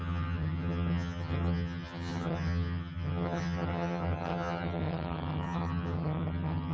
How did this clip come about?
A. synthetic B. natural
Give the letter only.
A